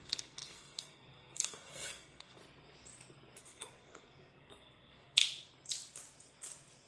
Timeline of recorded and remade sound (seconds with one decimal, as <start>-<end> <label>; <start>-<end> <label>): 0.0-2.4 remade; 2.4-3.4 recorded; 3.4-5.2 remade; 5.2-6.9 recorded